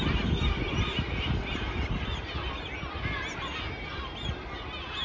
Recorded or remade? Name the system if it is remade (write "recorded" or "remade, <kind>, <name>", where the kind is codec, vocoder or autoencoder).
recorded